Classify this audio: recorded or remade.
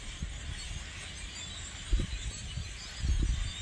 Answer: recorded